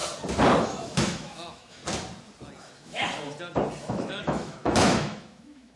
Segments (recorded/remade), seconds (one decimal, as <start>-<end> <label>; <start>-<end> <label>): 0.0-0.6 recorded; 0.6-1.8 remade; 1.8-2.6 recorded; 2.6-3.0 remade; 3.0-3.8 recorded; 3.8-5.8 remade